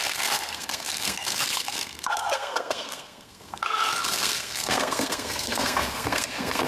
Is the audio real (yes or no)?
no